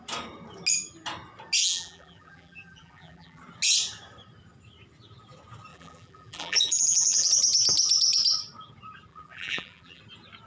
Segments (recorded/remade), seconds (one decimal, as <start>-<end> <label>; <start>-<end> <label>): 0.0-1.6 recorded; 1.6-3.4 remade; 3.4-5.7 recorded; 5.7-7.3 remade; 7.3-9.1 recorded; 9.1-10.0 remade; 10.0-10.5 recorded